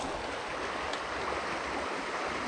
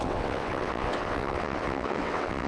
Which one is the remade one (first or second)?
second